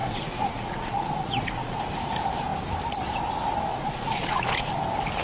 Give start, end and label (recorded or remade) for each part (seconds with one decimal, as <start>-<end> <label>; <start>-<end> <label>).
0.0-1.8 remade; 1.8-3.7 recorded; 3.7-4.7 remade; 4.7-5.2 recorded